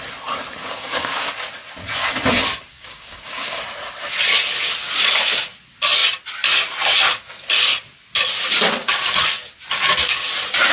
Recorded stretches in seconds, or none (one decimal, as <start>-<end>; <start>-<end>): 0.0-0.6; 1.3-2.7; 3.6-10.7